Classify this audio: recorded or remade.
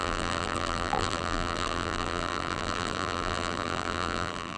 remade